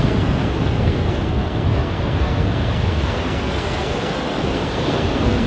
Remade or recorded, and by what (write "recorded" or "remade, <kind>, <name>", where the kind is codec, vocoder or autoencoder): remade, codec, SNAC